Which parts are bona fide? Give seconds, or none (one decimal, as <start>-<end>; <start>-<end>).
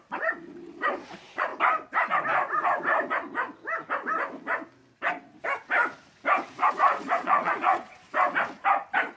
1.5-6.7; 8.0-9.2